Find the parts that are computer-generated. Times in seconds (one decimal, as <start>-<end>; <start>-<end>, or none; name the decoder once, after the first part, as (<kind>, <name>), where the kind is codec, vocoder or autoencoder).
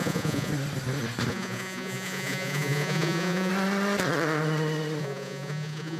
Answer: 0.0-0.5 (vocoder, Vocos); 1.3-3.5; 5.0-6.0